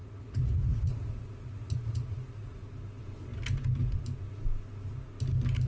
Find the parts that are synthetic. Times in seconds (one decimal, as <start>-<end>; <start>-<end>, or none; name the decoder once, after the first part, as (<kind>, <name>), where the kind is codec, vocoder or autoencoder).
0.0-2.6 (vocoder, Vocos)